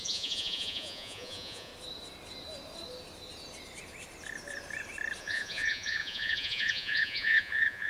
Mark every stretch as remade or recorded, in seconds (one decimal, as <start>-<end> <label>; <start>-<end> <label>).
0.0-1.7 remade; 1.7-5.2 recorded; 5.2-7.9 remade